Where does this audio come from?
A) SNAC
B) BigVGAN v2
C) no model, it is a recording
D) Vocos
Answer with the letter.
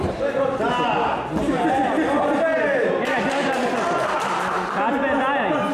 C